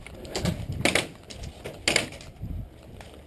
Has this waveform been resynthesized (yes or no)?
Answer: no